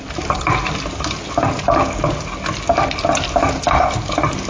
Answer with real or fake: real